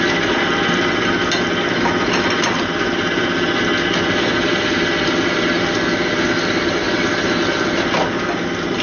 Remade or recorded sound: recorded